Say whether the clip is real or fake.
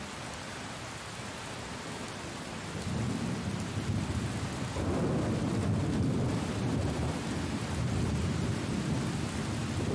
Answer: real